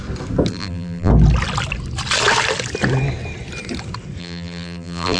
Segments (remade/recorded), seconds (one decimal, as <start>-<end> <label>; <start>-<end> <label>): 0.0-0.5 recorded; 0.5-1.1 remade; 1.1-4.2 recorded; 4.2-5.2 remade